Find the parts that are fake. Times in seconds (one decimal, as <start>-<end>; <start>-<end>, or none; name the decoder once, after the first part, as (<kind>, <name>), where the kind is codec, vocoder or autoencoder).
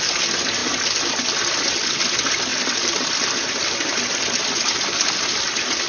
none